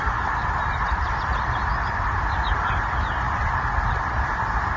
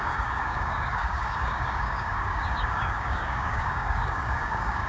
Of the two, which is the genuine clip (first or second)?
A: first